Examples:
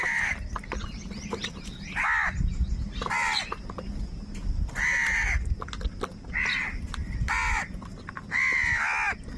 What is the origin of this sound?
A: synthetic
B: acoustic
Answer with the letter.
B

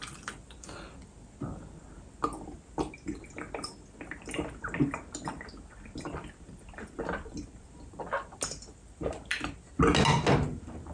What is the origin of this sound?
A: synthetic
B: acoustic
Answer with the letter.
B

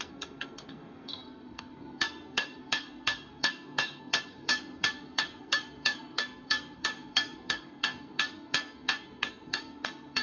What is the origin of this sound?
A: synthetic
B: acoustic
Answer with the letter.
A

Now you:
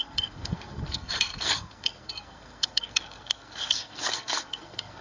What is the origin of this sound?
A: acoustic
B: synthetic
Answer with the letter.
B